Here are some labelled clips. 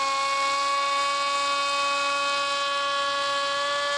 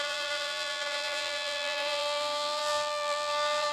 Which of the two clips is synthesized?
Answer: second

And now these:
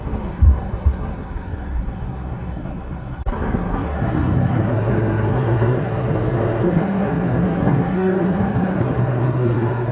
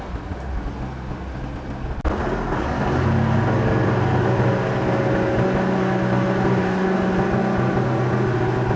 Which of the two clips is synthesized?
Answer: first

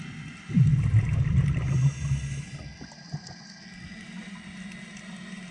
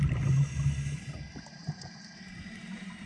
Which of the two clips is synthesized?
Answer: second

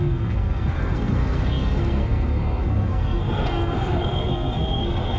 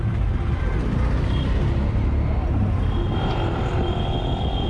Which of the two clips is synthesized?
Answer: first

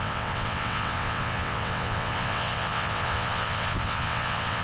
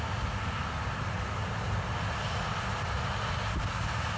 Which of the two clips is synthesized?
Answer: first